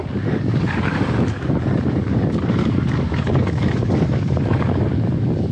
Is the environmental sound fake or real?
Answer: fake